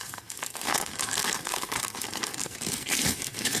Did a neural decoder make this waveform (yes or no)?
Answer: yes